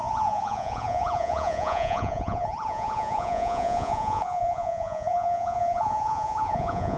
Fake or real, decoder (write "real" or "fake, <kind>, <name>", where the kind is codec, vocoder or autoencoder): fake, vocoder, Vocos